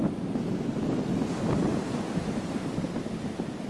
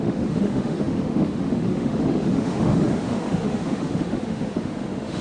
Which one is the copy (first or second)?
second